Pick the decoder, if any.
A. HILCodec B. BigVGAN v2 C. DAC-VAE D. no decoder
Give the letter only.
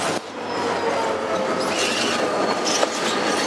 D